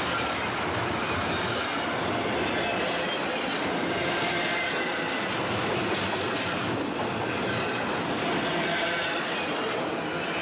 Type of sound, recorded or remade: recorded